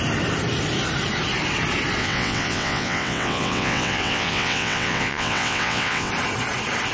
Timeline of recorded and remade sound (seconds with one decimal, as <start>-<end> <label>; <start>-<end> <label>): 0.0-2.0 recorded; 2.0-6.1 remade; 6.1-6.9 recorded